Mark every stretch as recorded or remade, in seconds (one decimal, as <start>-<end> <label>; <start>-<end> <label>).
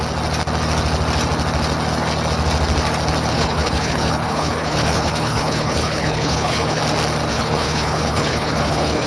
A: 0.0-3.3 recorded; 3.3-6.8 remade; 6.8-7.3 recorded; 7.3-9.1 remade